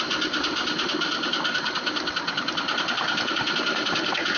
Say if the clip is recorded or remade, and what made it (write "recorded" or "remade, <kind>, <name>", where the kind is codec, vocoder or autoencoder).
recorded